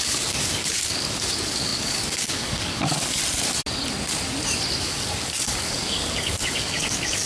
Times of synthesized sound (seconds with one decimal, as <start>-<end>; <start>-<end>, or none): 0.0-3.2; 4.7-7.3